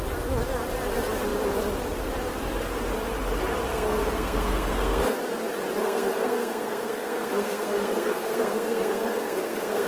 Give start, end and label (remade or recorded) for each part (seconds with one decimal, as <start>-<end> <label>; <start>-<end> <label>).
0.0-3.7 recorded; 3.7-5.0 remade; 5.0-5.8 recorded; 5.8-9.9 remade